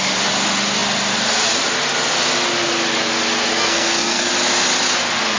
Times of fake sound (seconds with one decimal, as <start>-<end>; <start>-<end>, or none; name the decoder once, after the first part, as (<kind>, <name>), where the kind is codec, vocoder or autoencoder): 3.5-4.3 (codec, SNAC)